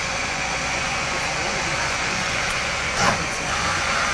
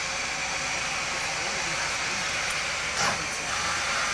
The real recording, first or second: second